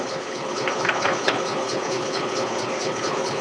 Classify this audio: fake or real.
fake